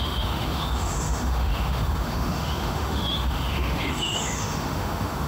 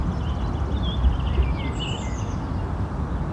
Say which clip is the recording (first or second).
second